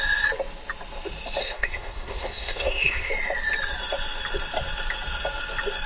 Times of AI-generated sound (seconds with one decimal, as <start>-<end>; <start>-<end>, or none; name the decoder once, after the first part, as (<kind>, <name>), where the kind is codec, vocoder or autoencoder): 1.4-3.1 (codec, SNAC)